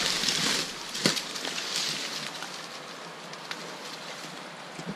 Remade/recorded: recorded